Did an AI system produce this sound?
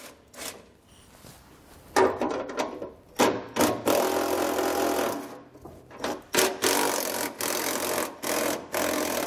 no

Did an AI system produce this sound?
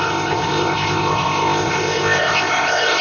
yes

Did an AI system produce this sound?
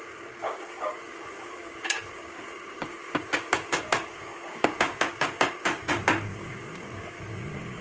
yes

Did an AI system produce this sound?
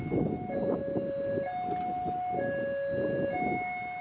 no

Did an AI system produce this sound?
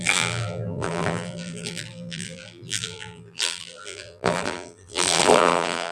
yes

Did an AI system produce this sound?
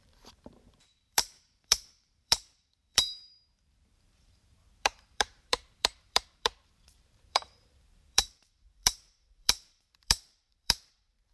yes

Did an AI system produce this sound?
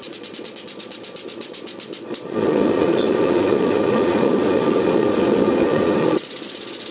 yes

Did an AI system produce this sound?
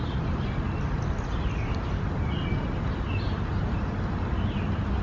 no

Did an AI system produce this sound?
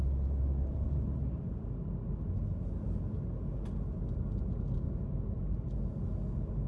no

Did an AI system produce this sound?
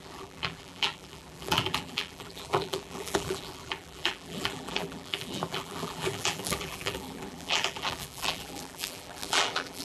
yes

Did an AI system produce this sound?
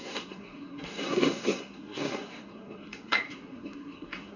yes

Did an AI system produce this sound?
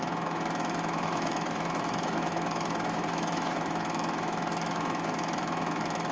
yes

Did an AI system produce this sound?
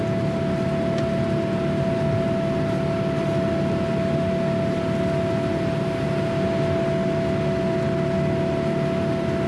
no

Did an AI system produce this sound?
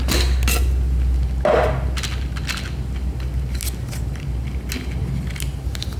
no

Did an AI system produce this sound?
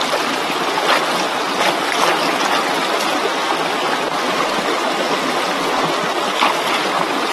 no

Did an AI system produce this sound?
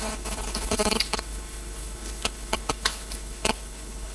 yes